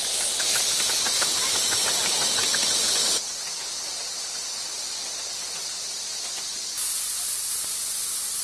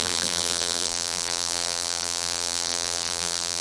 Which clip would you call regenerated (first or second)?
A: second